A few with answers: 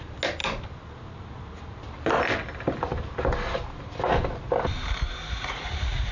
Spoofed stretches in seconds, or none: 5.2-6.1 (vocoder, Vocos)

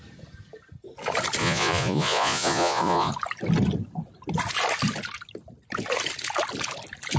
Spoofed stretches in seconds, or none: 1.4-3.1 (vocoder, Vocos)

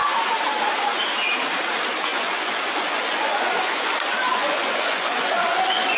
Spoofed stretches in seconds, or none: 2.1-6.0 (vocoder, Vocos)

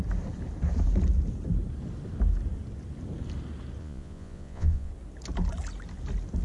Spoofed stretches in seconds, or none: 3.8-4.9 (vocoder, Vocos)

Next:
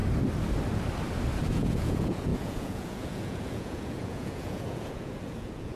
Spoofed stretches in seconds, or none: 1.5-5.8 (vocoder, Vocos)

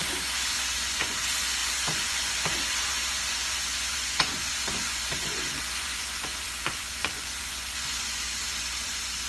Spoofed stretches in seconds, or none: 0.0-9.3 (vocoder, Vocos)

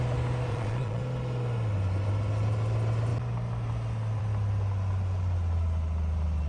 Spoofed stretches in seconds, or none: 0.5-1.0 (vocoder, Vocos)